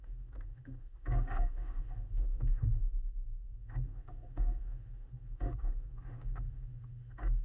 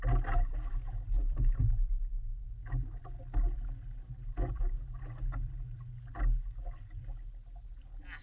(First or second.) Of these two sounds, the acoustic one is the second